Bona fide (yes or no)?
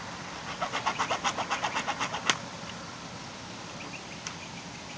yes